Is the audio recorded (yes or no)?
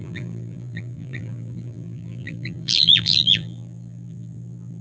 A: no